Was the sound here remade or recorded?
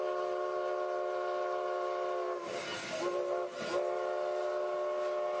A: recorded